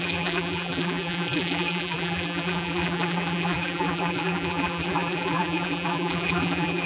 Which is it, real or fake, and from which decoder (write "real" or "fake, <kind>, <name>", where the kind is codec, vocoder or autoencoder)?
fake, vocoder, BigVGAN v2